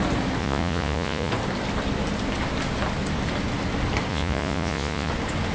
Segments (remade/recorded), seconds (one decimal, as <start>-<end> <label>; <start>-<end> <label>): 0.0-0.4 recorded; 0.4-1.3 remade; 1.3-4.1 recorded; 4.1-5.1 remade; 5.1-5.5 recorded